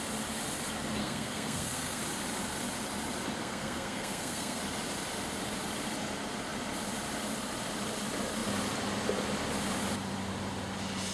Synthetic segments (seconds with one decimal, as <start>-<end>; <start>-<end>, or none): 1.0-2.0; 3.4-4.6